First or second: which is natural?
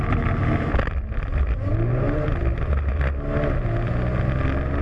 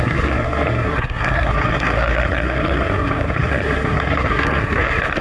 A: first